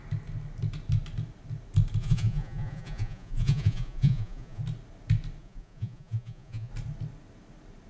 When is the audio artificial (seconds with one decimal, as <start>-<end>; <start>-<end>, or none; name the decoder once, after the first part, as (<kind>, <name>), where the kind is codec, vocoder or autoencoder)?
2.0-4.6 (vocoder, Vocos); 5.4-6.7